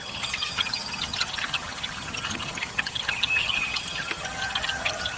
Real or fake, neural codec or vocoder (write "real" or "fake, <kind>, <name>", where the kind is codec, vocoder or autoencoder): fake, vocoder, HiFi-GAN